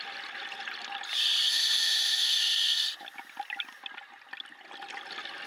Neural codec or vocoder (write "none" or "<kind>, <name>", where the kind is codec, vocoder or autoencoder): none